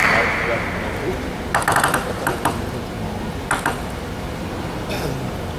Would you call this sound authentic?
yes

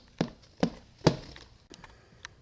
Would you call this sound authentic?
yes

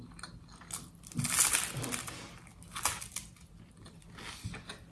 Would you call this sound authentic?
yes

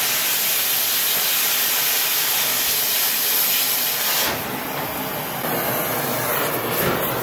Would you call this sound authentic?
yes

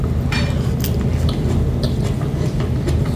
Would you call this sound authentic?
yes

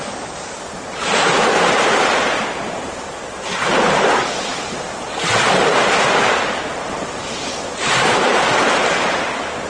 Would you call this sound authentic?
no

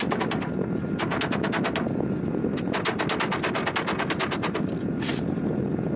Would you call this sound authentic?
yes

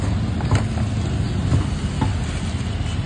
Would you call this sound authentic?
yes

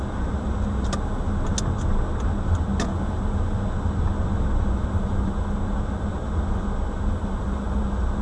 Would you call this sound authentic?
yes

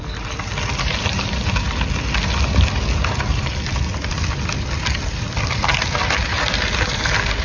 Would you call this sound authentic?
yes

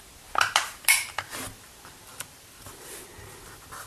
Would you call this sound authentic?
yes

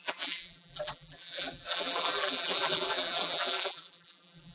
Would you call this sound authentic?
no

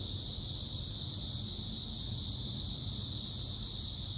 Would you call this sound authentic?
yes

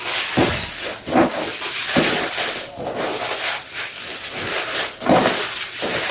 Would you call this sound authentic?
yes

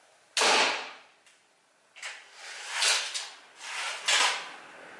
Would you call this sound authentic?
yes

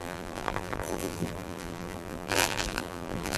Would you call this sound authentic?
no